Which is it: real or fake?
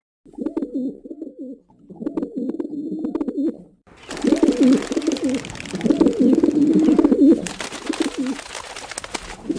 real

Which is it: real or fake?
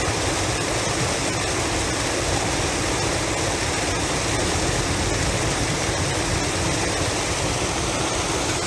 real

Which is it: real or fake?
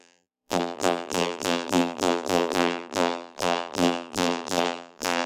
fake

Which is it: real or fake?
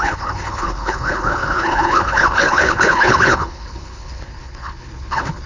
fake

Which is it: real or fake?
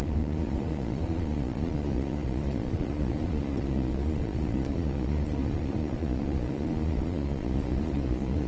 fake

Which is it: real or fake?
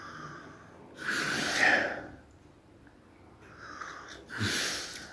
real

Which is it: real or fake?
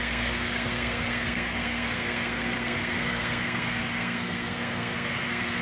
fake